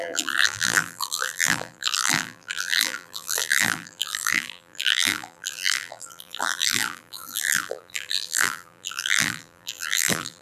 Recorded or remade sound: remade